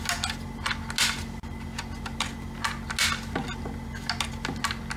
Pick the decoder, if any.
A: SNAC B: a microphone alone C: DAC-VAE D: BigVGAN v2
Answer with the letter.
B